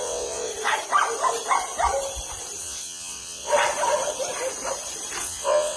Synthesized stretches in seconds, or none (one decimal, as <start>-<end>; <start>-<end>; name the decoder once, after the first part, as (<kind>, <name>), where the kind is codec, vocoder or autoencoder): 0.0-0.5 (vocoder, WaveNeXt); 2.6-3.5; 5.2-5.8